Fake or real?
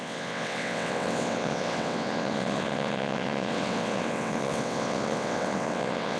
fake